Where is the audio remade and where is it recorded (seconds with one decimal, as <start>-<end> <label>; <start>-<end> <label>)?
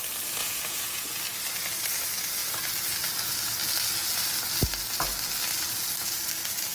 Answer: 0.0-0.4 recorded; 0.4-1.2 remade; 1.2-6.7 recorded